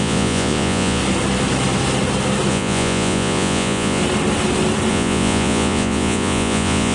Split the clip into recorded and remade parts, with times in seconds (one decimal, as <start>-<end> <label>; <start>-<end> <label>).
0.0-1.0 remade; 1.0-2.5 recorded; 2.5-4.0 remade; 4.0-4.9 recorded; 4.9-6.9 remade